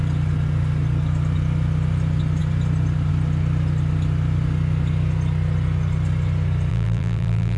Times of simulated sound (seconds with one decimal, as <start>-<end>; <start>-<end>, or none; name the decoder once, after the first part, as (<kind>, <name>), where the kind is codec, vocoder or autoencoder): 6.7-7.6 (vocoder, BigVGAN v2)